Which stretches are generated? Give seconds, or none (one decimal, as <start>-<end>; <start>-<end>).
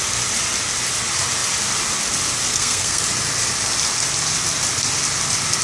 2.5-3.0